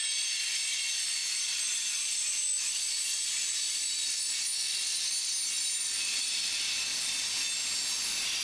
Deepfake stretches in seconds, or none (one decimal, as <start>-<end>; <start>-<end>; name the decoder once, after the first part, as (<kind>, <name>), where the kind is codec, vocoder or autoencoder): none